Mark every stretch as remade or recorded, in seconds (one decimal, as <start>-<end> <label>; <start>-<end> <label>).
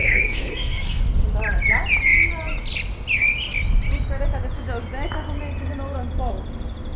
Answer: 0.0-1.0 remade; 1.0-7.0 recorded